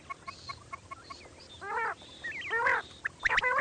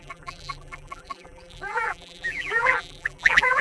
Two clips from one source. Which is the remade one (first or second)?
second